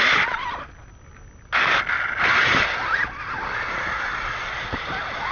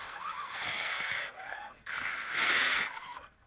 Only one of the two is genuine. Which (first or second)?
first